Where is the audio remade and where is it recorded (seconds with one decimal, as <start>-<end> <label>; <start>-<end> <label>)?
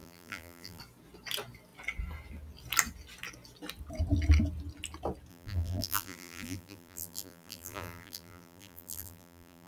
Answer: 0.0-0.8 remade; 0.8-5.3 recorded; 5.3-9.7 remade